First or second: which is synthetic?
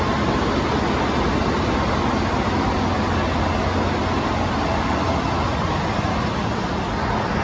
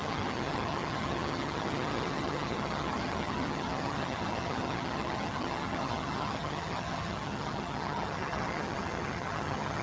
second